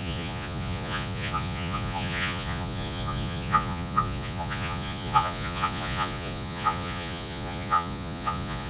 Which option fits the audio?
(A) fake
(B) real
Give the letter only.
A